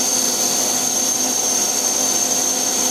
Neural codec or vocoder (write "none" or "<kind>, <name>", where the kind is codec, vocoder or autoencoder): none